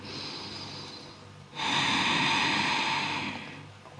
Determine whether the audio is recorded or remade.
recorded